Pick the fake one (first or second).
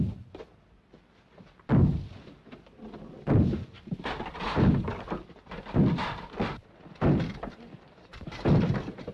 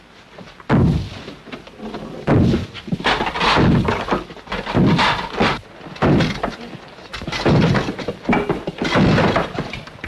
first